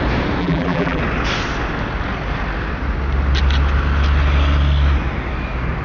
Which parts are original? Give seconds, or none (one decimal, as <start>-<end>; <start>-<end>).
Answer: 0.0-0.4; 1.0-5.8